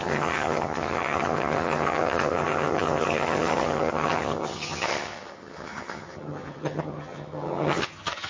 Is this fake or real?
fake